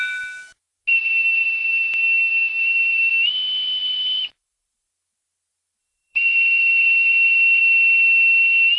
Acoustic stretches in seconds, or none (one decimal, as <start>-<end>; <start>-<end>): 0.0-2.5; 3.1-3.8; 4.9-5.8; 7.6-8.8